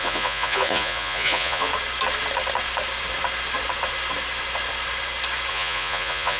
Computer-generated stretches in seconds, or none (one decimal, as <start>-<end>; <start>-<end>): 0.0-1.7; 5.5-6.4